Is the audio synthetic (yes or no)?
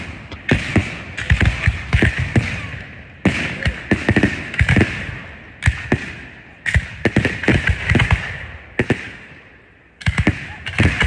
no